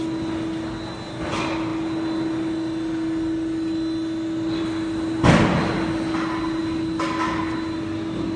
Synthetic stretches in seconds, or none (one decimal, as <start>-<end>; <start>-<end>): none